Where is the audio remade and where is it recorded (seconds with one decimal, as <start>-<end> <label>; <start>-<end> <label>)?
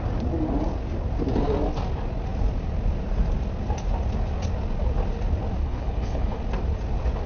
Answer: 0.0-5.6 recorded; 5.6-6.4 remade; 6.4-7.3 recorded